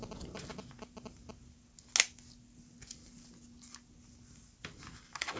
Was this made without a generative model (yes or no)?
yes